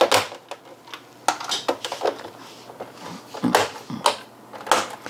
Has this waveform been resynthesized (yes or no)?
no